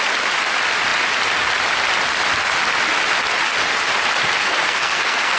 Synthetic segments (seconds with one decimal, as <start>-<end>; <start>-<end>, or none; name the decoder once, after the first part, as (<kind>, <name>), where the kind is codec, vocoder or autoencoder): 4.4-5.4 (codec, SNAC)